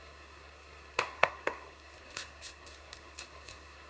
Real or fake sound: fake